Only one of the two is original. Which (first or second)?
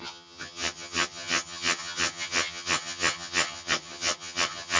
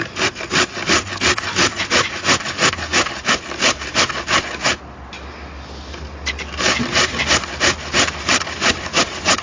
second